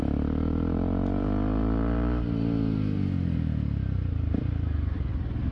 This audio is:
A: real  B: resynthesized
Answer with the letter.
A